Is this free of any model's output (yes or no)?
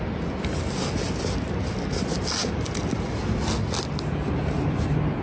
yes